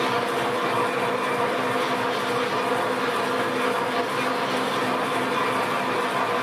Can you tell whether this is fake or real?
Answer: real